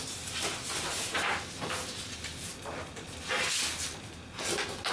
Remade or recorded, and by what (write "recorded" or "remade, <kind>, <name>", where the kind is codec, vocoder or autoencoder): recorded